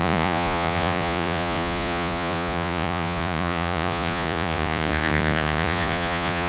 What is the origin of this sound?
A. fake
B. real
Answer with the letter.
A